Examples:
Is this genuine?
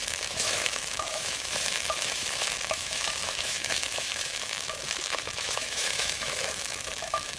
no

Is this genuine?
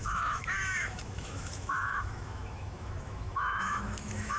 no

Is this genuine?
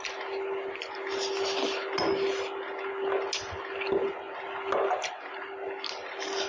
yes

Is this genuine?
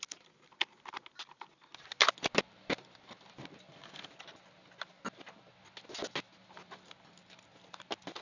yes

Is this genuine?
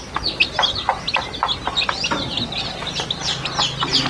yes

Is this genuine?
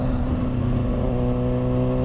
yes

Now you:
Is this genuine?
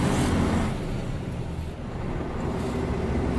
yes